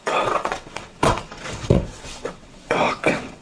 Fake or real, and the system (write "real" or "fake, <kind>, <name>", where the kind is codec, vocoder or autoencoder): fake, vocoder, WaveNeXt